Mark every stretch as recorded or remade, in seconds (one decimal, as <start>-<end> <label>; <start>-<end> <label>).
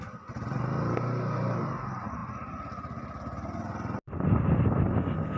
0.0-5.4 recorded